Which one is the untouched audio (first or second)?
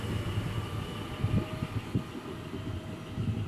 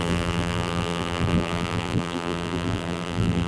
first